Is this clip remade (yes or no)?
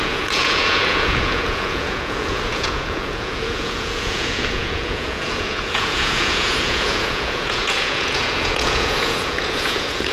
yes